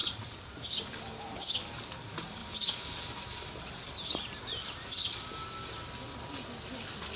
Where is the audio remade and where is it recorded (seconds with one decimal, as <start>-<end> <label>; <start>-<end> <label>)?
0.0-0.6 remade; 0.6-2.4 recorded; 2.4-4.1 remade; 4.1-7.2 recorded